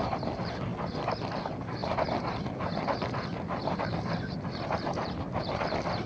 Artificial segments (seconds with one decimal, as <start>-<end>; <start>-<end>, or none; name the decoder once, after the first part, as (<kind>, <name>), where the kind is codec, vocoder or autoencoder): 1.8-5.5 (vocoder, BigVGAN v2)